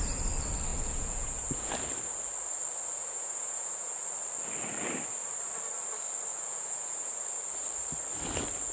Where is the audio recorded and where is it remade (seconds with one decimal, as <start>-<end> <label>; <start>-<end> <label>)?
0.0-0.7 recorded; 0.7-1.7 remade; 1.7-3.0 recorded; 3.0-4.0 remade; 4.0-6.3 recorded; 6.3-7.2 remade; 7.2-8.7 recorded